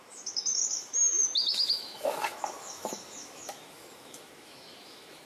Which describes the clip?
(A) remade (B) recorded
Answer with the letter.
A